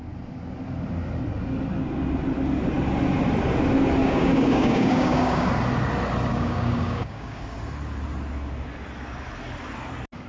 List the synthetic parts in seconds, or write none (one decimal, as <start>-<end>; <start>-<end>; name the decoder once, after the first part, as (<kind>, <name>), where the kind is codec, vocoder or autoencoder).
4.0-5.5 (codec, DAC); 6.3-7.4